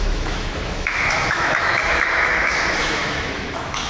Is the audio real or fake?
fake